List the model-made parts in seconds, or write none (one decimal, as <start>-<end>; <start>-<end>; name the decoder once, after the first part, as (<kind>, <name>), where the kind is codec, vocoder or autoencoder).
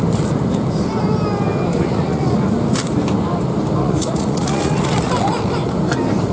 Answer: 1.8-2.4 (vocoder, Vocos); 3.8-5.1